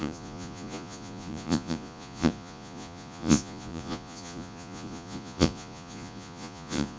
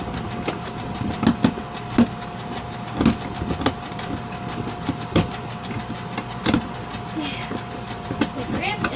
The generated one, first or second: first